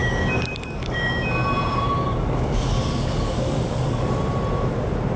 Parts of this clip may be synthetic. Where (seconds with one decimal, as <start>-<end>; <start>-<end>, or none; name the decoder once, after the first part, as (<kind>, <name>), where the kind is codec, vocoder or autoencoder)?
0.0-1.1 (codec, DAC); 2.0-4.0